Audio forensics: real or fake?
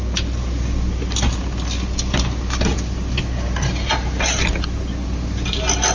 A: real